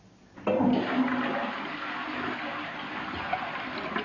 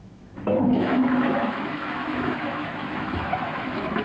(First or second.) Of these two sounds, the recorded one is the first